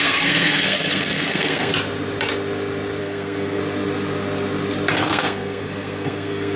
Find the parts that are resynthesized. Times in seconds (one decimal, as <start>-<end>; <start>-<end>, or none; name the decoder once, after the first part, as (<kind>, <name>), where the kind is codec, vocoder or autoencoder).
0.0-1.7 (codec, SNAC); 3.0-3.6; 4.9-6.6